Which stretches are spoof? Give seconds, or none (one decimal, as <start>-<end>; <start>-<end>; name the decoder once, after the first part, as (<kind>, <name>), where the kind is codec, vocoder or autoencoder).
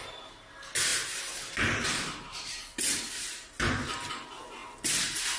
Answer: none